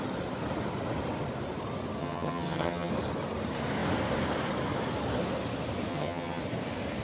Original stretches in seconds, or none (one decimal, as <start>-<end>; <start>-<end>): 0.0-2.0; 2.9-5.9; 6.4-7.0